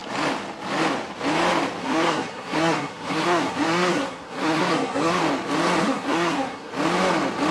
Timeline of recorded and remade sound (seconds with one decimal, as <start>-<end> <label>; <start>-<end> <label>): 0.0-1.8 recorded; 1.8-5.2 remade; 5.2-5.8 recorded; 5.8-6.7 remade; 6.7-7.5 recorded